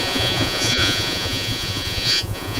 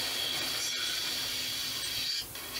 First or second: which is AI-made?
first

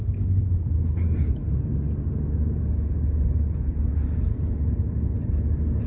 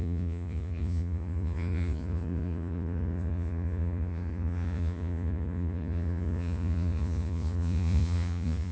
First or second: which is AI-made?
second